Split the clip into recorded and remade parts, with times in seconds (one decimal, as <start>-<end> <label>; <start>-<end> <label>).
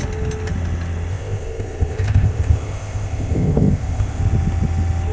0.0-1.1 recorded; 1.1-4.2 remade; 4.2-5.1 recorded